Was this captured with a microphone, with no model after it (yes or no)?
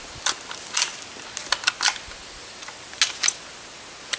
yes